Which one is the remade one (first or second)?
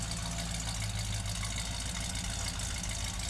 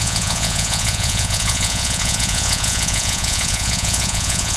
second